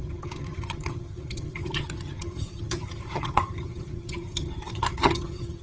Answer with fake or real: fake